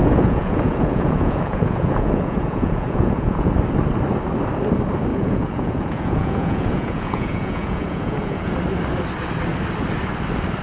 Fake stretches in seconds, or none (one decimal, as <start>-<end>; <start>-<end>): 0.0-3.5; 5.1-8.5